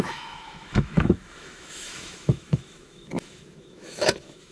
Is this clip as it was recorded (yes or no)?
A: no